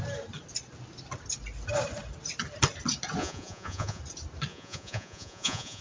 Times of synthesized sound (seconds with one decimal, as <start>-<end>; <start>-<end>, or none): 3.2-4.0; 4.5-5.8